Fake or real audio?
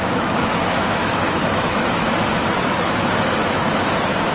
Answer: fake